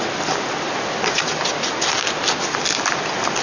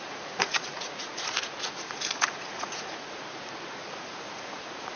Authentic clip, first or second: first